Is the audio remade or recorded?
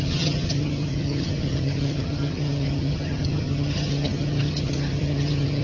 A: remade